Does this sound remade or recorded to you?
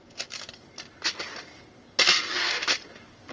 recorded